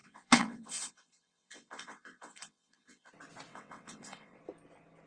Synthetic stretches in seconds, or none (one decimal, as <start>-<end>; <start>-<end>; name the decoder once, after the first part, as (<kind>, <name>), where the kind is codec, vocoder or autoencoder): 0.0-3.1 (vocoder, WaveNeXt); 3.5-4.4